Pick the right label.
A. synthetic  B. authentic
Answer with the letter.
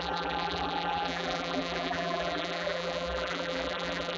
A